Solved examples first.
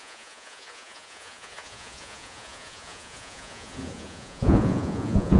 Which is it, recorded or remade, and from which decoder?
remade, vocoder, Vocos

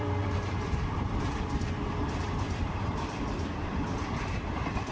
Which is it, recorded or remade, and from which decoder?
remade, vocoder, BigVGAN v2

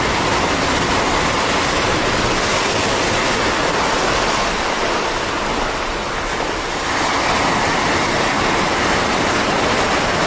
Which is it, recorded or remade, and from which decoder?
recorded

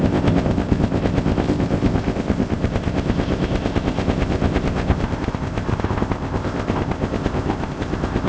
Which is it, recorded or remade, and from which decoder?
remade, codec, ZipCodec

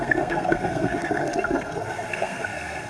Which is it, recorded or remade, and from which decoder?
remade, codec, SNAC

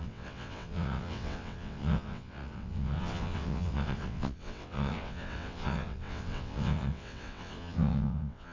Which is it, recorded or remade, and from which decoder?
remade, vocoder, WaveNeXt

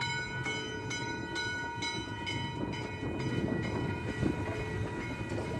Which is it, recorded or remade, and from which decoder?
recorded